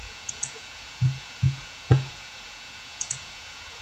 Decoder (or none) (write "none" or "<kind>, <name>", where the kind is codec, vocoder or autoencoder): vocoder, Vocos